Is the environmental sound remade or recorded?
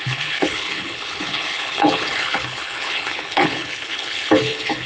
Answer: remade